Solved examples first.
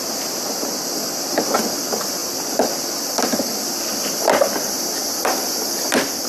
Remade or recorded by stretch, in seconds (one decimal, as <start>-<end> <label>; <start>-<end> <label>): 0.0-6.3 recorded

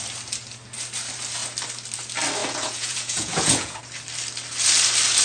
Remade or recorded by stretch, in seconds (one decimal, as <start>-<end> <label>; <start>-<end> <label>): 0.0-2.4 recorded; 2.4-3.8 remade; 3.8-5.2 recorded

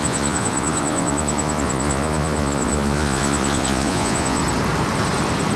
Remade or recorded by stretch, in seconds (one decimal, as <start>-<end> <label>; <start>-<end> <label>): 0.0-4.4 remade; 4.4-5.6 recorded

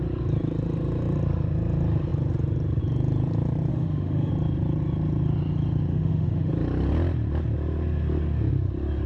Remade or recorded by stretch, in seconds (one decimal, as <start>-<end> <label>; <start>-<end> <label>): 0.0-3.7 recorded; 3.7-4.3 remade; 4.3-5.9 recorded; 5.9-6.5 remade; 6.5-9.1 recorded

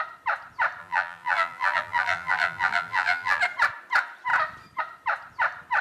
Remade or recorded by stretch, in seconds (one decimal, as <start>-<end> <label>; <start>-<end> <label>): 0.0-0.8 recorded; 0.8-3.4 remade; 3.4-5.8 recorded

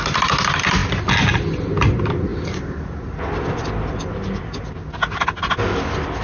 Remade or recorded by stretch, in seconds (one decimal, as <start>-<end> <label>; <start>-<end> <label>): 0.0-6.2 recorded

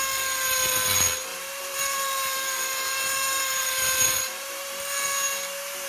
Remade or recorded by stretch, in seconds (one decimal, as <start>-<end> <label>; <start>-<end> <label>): 0.0-1.3 recorded; 1.3-4.8 remade; 4.8-5.9 recorded